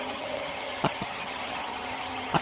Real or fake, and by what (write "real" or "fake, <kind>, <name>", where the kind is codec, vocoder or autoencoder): fake, vocoder, HiFi-GAN